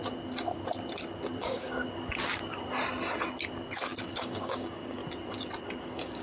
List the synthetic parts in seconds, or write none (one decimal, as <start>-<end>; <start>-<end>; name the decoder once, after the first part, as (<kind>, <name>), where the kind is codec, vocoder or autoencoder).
1.4-1.8 (codec, DAC); 4.0-5.0; 5.8-6.2